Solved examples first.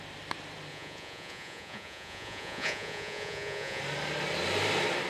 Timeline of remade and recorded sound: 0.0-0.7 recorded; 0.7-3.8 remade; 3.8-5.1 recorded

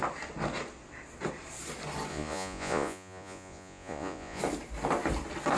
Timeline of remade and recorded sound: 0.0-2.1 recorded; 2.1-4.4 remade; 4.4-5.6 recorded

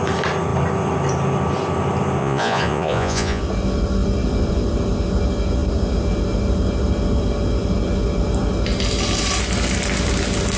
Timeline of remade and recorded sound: 0.0-2.2 recorded; 2.2-3.4 remade; 3.4-10.6 recorded

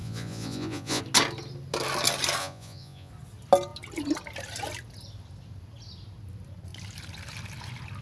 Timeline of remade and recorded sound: 0.0-1.0 remade; 1.0-2.4 recorded; 2.4-3.1 remade; 3.1-8.0 recorded

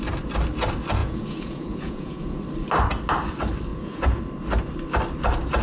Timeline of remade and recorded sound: 0.0-1.0 recorded; 1.0-2.4 remade; 2.4-3.7 recorded; 3.7-4.2 remade; 4.2-5.6 recorded